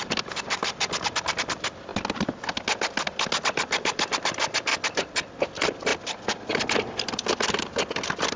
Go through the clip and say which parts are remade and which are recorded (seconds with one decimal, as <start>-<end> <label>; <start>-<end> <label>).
0.0-1.9 remade; 1.9-3.4 recorded; 3.4-8.4 remade